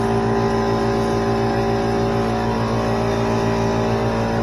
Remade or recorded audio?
recorded